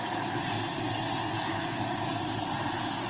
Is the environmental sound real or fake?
real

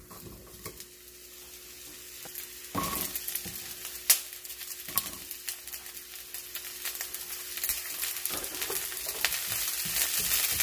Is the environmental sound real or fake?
real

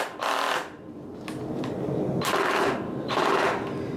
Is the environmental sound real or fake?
real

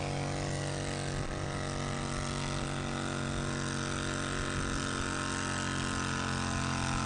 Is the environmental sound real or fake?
real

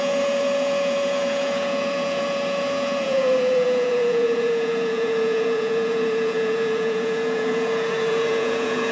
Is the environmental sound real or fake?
fake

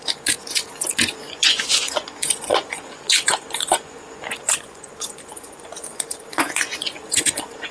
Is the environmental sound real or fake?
fake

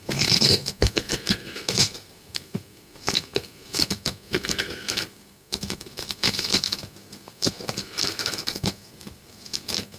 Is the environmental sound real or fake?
fake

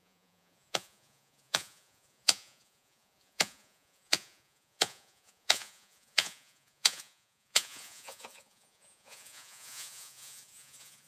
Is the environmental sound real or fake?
fake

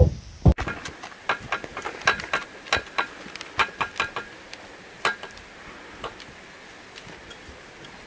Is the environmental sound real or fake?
real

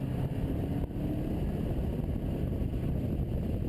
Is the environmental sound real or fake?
real